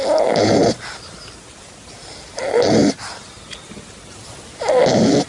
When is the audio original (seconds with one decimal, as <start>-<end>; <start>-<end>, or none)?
0.0-5.3